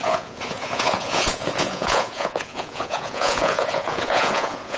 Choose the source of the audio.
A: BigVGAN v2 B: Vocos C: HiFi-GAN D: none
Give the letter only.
B